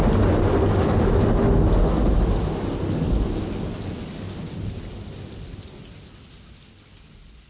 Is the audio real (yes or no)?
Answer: yes